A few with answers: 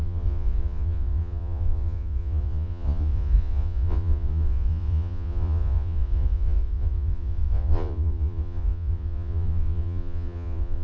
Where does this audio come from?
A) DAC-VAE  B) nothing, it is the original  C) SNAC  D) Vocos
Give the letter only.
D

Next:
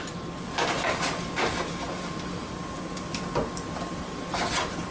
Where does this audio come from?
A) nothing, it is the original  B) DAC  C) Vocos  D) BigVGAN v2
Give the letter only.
A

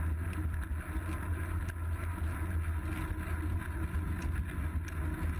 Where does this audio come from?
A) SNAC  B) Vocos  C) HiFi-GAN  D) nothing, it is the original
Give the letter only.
D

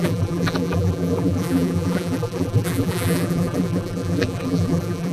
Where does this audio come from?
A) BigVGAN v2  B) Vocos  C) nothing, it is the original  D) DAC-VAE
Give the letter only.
A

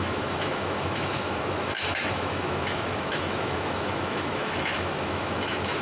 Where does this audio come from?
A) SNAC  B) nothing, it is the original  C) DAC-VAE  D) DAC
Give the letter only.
C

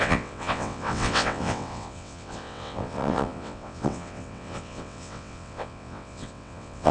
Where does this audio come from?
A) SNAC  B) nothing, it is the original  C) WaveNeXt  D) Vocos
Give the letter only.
C